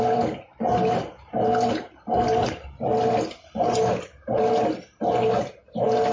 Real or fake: real